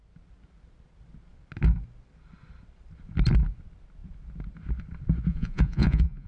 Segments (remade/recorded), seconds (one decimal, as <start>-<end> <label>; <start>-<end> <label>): 0.0-5.3 recorded; 5.3-6.3 remade